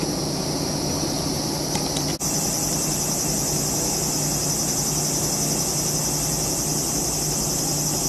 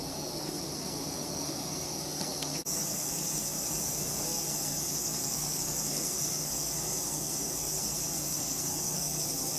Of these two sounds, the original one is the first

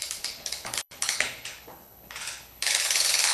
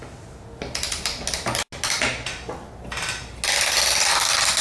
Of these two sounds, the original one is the second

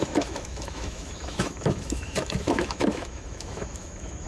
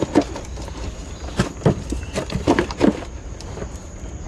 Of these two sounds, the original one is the second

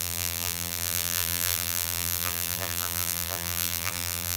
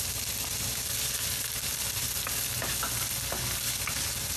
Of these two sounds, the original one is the second